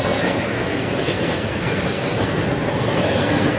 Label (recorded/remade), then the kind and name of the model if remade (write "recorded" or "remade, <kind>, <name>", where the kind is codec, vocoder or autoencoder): remade, codec, SNAC